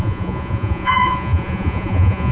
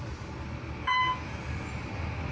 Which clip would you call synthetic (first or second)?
first